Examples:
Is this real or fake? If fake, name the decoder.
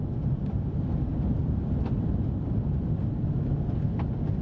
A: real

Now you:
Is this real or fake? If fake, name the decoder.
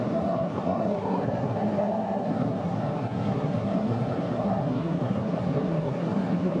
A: fake, codec, SNAC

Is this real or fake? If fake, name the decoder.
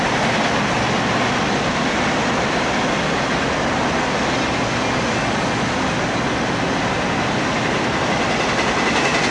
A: real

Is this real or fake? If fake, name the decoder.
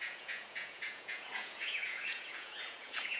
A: fake, vocoder, Vocos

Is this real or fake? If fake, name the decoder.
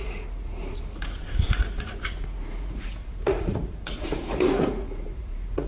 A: fake, vocoder, Vocos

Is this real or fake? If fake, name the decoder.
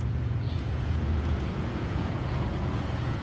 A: fake, vocoder, Vocos